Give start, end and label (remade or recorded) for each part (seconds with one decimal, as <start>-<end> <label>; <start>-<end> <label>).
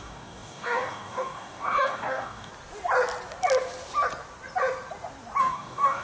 0.0-2.5 remade; 2.5-5.4 recorded; 5.4-6.0 remade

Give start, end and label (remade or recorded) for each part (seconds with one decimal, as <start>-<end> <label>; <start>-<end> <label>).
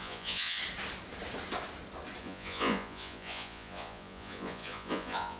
0.0-0.6 remade; 0.6-2.2 recorded; 2.2-5.4 remade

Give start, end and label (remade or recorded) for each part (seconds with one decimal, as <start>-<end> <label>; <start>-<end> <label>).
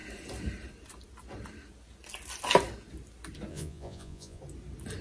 0.0-3.5 recorded; 3.5-4.4 remade; 4.4-5.0 recorded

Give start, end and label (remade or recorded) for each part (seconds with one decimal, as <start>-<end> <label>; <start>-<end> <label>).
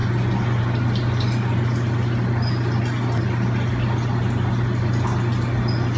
0.0-6.0 recorded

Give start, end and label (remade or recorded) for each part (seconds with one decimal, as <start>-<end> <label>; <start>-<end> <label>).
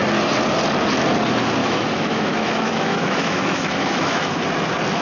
0.0-1.6 recorded; 1.6-4.4 remade; 4.4-5.0 recorded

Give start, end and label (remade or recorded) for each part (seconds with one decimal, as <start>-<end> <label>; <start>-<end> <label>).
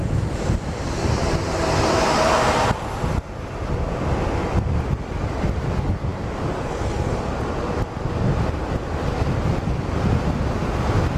0.0-11.2 recorded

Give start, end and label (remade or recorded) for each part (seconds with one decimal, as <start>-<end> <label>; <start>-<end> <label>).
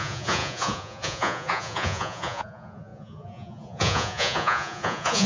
0.0-5.3 remade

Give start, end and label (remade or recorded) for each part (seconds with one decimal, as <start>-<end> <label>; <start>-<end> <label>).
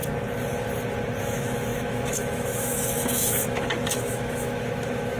0.0-1.2 recorded; 1.2-5.2 remade